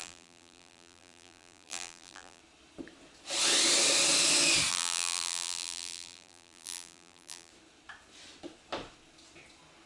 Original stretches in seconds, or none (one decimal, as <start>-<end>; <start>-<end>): 2.4-4.7; 7.5-9.9